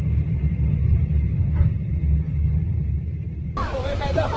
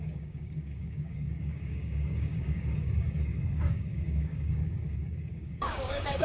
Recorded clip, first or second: first